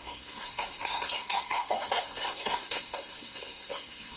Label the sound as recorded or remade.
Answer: remade